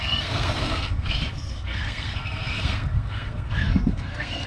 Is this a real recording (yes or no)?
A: no